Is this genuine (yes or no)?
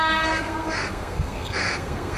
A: no